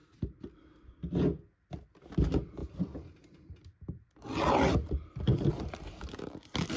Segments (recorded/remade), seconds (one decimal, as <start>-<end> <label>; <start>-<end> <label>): 0.0-6.8 recorded